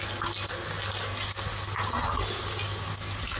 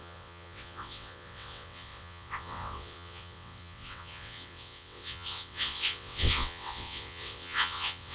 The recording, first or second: first